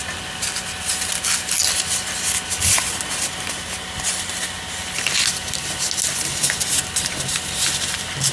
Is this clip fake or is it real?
real